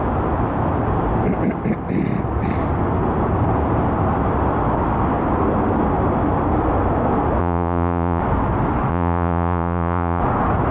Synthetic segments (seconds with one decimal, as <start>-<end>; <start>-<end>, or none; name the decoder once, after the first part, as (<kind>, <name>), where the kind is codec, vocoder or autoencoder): 7.4-8.2 (vocoder, Vocos); 8.9-10.2

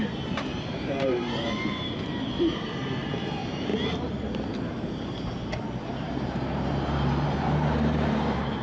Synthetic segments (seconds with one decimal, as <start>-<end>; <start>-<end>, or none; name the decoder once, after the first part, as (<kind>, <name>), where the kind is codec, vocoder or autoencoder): 0.0-3.7 (vocoder, BigVGAN v2); 5.9-8.6

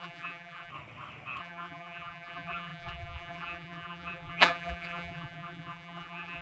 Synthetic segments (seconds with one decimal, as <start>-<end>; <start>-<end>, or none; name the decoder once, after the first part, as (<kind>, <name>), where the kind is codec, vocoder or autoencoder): 0.0-0.7 (vocoder, BigVGAN v2); 1.4-6.4

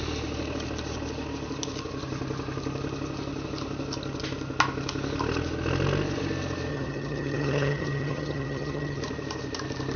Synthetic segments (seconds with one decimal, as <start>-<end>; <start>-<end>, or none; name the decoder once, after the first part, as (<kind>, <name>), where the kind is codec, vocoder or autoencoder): 6.7-9.0 (vocoder, HiFi-GAN)